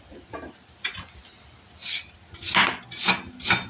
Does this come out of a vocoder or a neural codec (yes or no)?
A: no